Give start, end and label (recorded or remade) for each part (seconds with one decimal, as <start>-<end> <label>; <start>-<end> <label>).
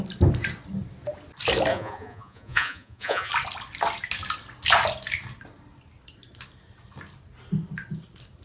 0.0-1.7 recorded; 1.7-3.3 remade; 3.3-8.4 recorded